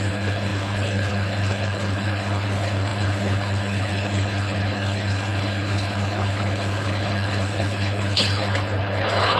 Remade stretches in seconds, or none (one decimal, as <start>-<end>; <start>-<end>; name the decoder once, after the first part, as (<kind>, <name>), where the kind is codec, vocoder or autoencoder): 0.0-9.4 (codec, HILCodec)